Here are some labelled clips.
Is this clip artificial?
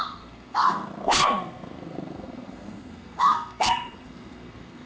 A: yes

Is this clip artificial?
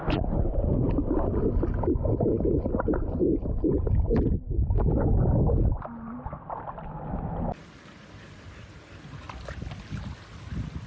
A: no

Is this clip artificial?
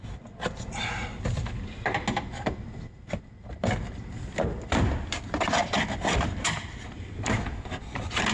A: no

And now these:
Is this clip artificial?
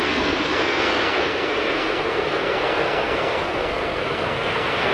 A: yes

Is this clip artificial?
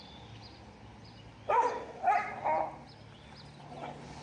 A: no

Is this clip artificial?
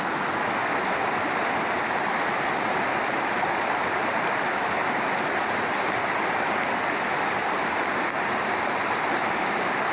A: no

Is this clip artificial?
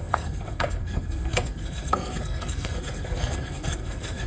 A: yes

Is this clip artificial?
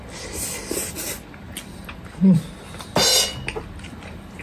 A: no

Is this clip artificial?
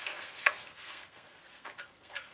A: yes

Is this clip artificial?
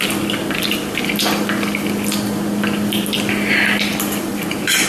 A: no